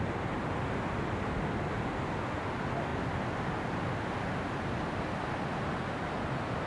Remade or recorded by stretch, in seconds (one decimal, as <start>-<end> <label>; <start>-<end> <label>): 0.0-6.7 recorded